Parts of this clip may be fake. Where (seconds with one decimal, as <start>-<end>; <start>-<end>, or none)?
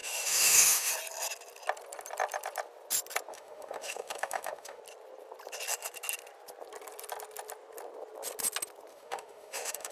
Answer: 0.0-0.9; 3.3-4.8; 8.9-9.9